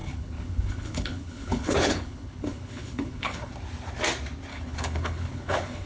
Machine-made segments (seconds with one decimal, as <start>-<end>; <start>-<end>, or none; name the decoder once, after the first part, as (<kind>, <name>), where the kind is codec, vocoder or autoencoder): 0.0-3.5 (codec, HILCodec); 4.5-5.9